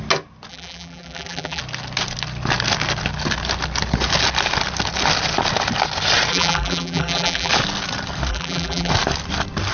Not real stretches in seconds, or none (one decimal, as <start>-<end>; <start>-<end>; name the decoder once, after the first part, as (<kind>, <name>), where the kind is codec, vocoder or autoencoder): 0.5-1.6 (vocoder, BigVGAN v2); 6.3-7.5; 8.3-8.9